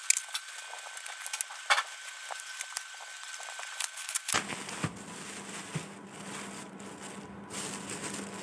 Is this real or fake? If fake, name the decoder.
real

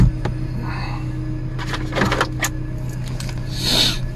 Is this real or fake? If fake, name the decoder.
real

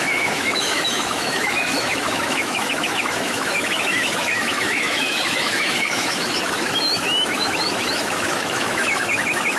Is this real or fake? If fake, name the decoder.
fake, autoencoder, DAC-VAE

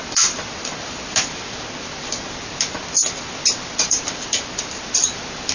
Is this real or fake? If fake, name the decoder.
real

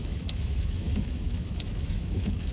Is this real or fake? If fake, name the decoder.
fake, autoencoder, DAC-VAE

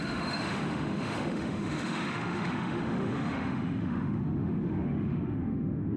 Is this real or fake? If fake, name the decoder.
fake, autoencoder, DAC-VAE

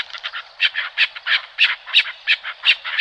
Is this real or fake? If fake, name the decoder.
real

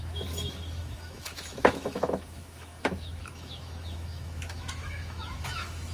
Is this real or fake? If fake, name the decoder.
fake, autoencoder, DAC-VAE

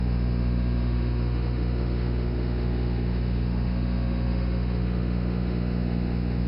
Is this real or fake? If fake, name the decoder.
fake, autoencoder, DAC-VAE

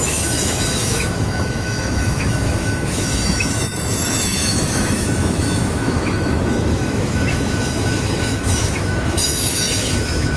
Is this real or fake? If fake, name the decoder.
fake, autoencoder, DAC-VAE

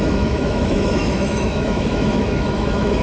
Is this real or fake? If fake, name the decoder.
fake, autoencoder, DAC-VAE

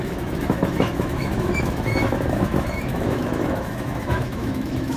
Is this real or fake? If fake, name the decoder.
fake, autoencoder, DAC-VAE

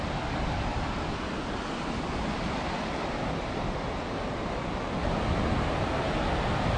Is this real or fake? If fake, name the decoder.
real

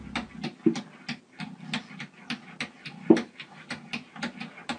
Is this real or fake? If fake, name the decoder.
real